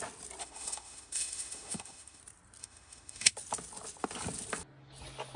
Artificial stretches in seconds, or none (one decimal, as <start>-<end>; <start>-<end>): 0.4-2.2; 2.6-3.3